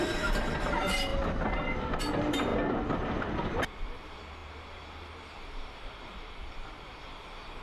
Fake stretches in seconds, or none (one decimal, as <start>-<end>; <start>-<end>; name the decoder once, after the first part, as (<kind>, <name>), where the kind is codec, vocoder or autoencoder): 0.0-1.1 (vocoder, BigVGAN v2); 2.0-2.5; 3.3-7.6